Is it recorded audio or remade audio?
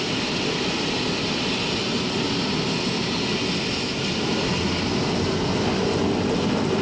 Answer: recorded